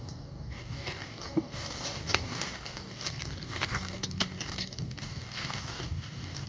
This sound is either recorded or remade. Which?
remade